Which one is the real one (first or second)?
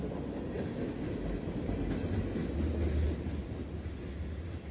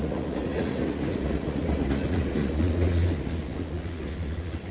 first